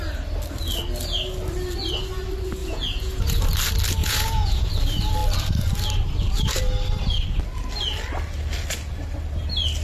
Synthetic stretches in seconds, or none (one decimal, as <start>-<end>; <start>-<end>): 2.6-3.4; 4.0-4.7